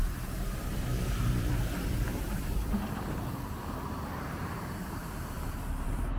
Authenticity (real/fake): fake